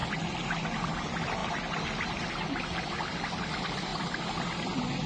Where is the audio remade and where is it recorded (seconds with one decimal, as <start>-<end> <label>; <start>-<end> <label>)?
0.0-5.1 recorded